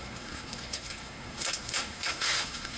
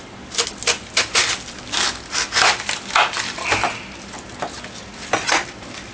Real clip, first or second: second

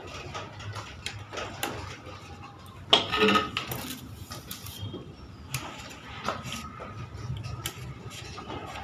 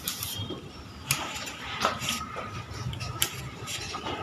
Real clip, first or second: first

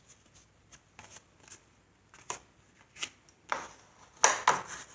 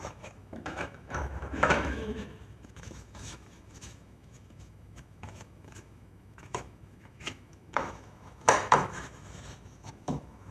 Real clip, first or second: first